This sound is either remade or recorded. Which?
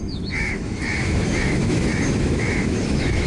remade